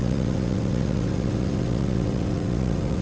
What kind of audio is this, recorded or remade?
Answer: remade